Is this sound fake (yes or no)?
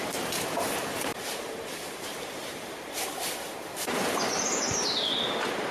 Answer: yes